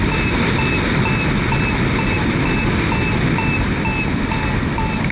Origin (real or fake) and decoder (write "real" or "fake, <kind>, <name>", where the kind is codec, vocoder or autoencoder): real